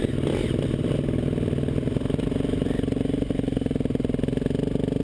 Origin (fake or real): real